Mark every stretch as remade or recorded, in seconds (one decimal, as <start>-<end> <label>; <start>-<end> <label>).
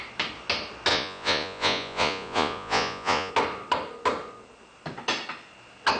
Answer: 0.0-0.9 recorded; 0.9-3.3 remade; 3.3-6.0 recorded